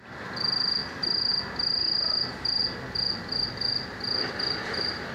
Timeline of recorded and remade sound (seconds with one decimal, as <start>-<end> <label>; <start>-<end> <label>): 0.0-5.1 recorded